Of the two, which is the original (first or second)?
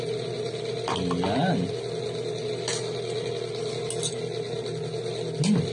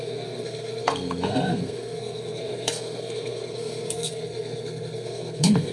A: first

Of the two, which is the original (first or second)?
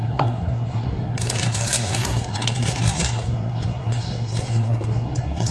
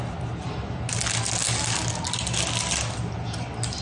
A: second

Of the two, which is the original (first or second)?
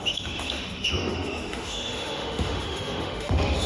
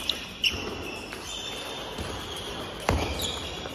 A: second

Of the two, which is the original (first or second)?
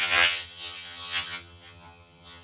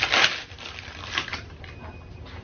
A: second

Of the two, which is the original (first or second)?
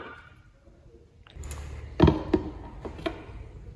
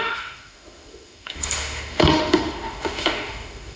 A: first